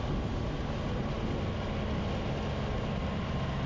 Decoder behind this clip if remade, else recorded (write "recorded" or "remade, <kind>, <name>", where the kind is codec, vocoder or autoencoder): recorded